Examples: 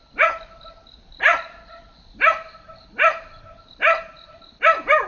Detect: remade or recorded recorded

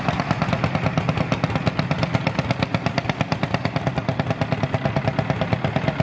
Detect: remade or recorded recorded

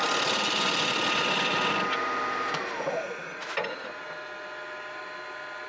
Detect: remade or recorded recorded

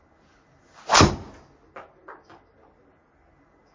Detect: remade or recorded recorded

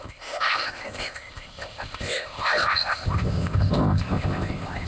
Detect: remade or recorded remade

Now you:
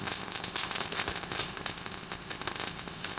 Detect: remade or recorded remade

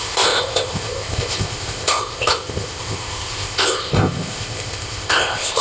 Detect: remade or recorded remade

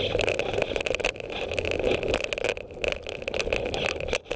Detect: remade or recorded recorded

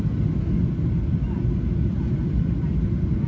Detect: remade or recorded recorded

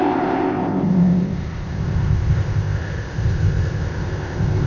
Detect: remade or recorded remade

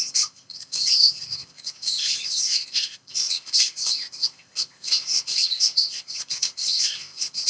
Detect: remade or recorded remade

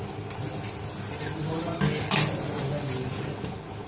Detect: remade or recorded recorded